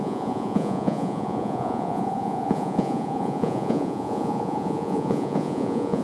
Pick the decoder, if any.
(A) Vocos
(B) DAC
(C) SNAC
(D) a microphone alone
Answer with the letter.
A